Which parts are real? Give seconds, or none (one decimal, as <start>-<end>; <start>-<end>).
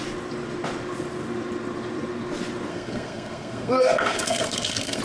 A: 0.0-2.7